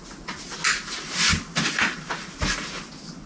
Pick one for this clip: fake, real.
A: real